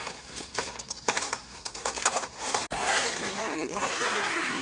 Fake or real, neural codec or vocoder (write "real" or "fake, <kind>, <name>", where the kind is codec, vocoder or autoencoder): fake, codec, SNAC